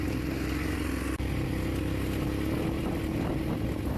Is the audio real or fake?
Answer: real